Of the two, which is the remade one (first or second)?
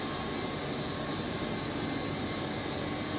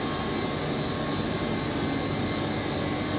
first